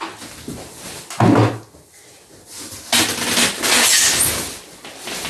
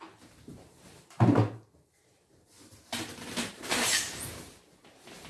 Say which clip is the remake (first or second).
second